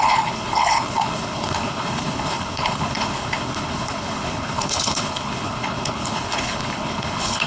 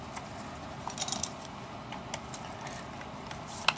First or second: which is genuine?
second